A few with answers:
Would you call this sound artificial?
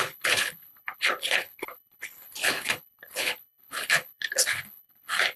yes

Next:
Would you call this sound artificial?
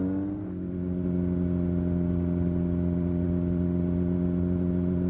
no